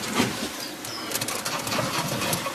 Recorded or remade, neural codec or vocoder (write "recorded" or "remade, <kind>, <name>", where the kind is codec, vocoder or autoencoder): recorded